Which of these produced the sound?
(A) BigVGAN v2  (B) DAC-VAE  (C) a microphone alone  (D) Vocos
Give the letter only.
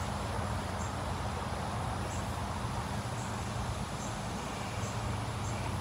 C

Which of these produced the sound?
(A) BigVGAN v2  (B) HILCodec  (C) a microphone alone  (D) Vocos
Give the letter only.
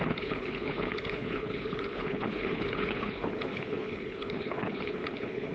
B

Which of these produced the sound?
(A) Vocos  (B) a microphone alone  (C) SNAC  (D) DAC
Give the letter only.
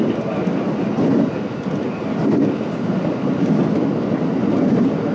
B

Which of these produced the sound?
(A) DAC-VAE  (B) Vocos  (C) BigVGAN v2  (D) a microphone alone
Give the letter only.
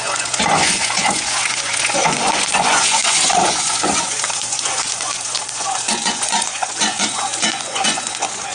B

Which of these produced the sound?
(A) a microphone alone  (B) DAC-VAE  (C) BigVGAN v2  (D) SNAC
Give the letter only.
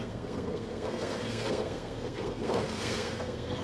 D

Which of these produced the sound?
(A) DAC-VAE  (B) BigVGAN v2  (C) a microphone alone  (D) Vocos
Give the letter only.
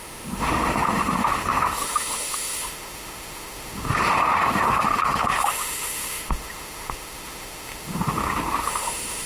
A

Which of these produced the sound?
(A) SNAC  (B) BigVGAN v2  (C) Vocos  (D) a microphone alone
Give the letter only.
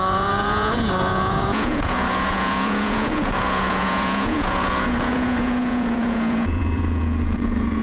C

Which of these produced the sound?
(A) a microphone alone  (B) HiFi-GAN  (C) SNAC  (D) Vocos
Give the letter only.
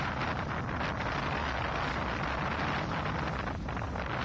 A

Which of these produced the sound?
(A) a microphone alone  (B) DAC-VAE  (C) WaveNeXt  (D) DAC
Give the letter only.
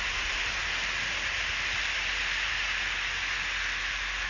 A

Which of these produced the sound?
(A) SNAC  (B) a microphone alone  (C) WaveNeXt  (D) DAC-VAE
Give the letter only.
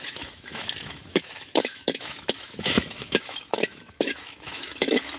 D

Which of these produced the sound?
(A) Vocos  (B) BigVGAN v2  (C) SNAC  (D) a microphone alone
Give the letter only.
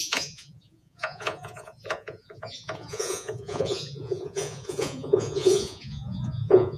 A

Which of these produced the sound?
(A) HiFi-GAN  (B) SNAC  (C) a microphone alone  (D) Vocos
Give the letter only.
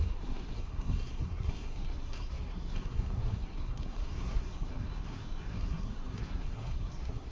B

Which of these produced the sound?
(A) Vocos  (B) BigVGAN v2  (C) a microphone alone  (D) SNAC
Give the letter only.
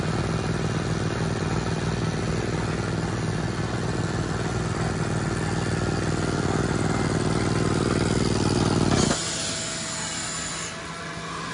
C